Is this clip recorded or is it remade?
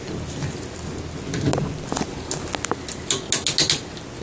recorded